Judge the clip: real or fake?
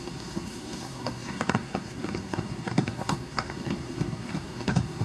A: fake